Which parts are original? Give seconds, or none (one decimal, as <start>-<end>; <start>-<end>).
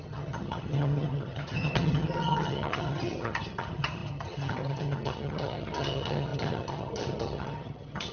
none